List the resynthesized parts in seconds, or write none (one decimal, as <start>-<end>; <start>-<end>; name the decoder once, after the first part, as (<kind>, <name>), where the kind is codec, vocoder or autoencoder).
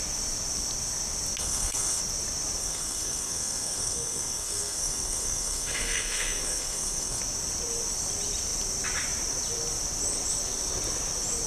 1.4-2.0 (codec, SNAC); 2.6-7.2